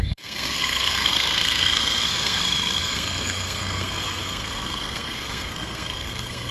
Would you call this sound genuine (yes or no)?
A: no